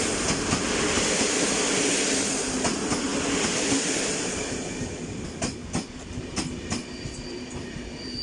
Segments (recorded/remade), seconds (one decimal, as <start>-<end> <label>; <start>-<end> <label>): 0.0-8.2 recorded